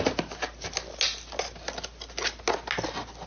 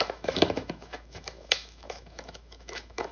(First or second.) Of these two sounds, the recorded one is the first